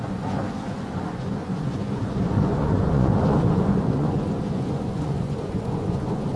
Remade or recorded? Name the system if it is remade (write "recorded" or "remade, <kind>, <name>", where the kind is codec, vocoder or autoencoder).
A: remade, vocoder, Vocos